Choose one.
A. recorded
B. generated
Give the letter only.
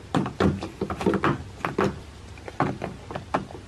A